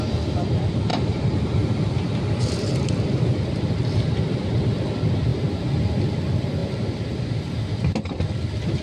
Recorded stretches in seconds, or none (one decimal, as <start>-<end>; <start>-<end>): 0.0-0.9; 4.6-6.6; 7.4-8.8